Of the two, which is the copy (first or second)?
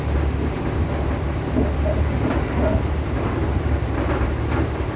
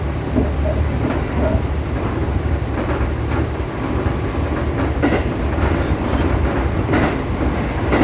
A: second